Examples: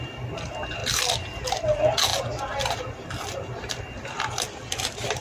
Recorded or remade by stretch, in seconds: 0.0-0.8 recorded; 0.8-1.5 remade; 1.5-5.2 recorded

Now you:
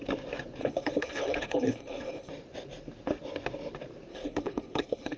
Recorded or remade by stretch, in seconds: 0.0-0.6 recorded; 0.6-2.3 remade; 2.3-4.1 recorded; 4.1-5.2 remade